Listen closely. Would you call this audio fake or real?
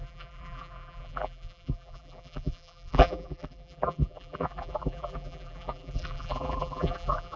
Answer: fake